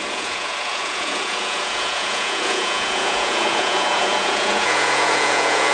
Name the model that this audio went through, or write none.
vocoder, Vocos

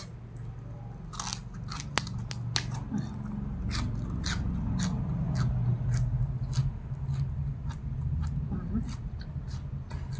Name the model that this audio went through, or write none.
none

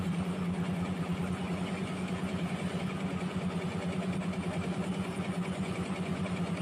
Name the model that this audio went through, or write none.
vocoder, Vocos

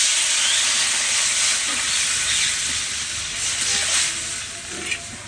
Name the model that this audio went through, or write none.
none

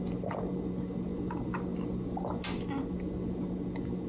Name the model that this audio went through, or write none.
none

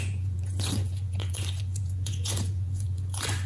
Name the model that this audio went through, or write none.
vocoder, Vocos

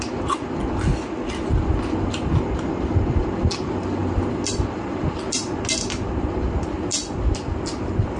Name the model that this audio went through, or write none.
none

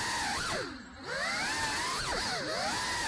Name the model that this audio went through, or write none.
none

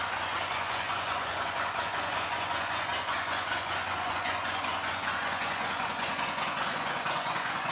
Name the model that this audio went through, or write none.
vocoder, Vocos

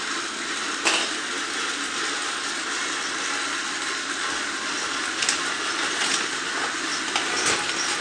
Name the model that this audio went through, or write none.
none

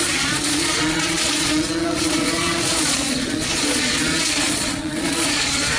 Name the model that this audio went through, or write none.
vocoder, Vocos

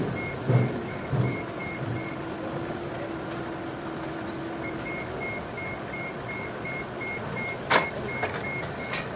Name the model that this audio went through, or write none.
none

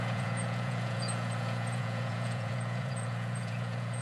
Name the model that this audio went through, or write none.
vocoder, Vocos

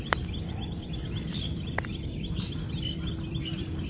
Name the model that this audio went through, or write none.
none